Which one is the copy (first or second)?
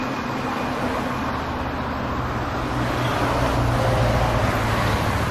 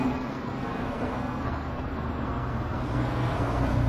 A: second